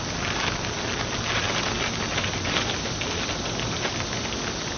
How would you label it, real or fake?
real